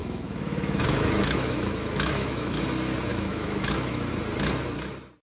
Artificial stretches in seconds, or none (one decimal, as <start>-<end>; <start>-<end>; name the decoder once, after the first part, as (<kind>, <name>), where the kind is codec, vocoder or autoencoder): 0.0-2.6 (autoencoder, DAC-VAE); 3.1-4.1